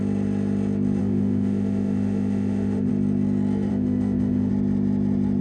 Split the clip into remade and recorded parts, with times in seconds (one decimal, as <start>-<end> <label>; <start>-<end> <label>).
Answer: 0.0-1.0 recorded; 1.0-2.9 remade; 2.9-3.7 recorded; 3.7-4.5 remade; 4.5-5.4 recorded